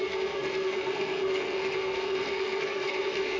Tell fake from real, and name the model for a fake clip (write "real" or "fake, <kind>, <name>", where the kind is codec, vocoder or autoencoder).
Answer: fake, codec, SNAC